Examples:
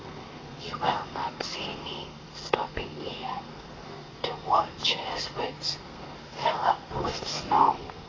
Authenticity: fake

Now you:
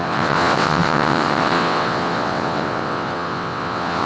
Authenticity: fake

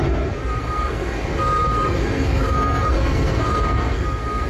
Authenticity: fake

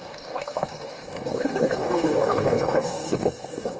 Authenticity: fake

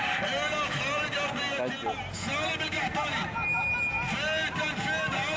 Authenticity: real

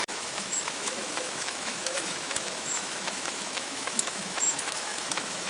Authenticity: fake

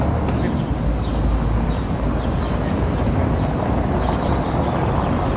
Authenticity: real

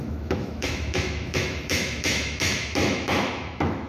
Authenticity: fake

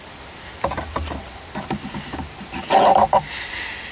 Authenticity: real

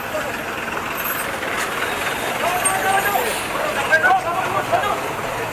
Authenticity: real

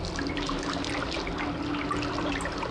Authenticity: real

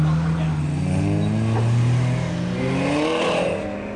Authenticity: real